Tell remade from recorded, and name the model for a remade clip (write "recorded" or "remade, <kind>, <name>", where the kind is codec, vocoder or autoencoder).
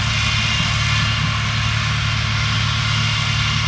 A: recorded